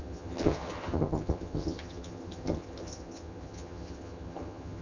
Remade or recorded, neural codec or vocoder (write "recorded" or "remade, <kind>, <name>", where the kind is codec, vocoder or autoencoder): remade, vocoder, HiFi-GAN